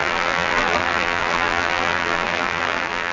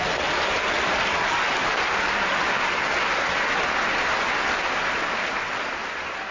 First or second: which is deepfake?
first